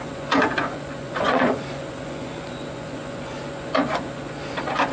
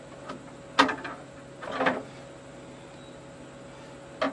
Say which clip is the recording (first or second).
second